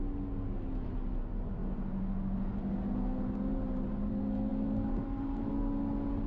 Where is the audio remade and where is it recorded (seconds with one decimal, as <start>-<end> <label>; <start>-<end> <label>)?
0.0-3.5 recorded; 3.5-4.1 remade; 4.1-4.5 recorded; 4.5-5.5 remade; 5.5-6.3 recorded